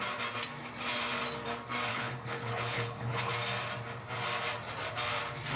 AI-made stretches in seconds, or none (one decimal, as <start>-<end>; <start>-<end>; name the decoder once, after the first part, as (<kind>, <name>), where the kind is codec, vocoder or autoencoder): 1.9-3.3 (codec, HILCodec)